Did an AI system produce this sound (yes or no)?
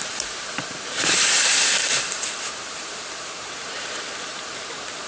yes